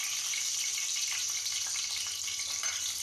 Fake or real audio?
real